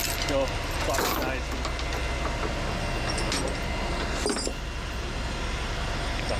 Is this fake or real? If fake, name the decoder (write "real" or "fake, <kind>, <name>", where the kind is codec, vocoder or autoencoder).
real